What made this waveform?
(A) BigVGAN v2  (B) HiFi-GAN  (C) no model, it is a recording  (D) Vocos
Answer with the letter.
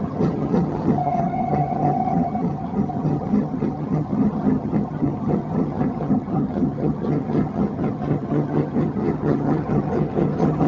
B